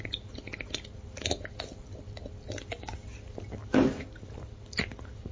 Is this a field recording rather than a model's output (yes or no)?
yes